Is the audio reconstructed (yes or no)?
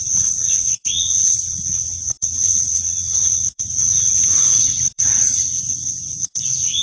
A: yes